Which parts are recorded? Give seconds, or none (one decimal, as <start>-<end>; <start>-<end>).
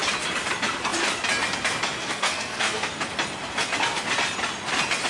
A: 0.0-2.0; 2.9-5.1